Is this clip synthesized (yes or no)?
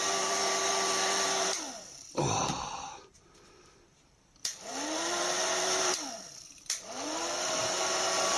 yes